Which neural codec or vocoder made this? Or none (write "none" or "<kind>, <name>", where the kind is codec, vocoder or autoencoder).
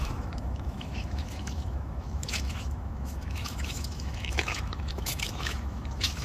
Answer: autoencoder, DAC-VAE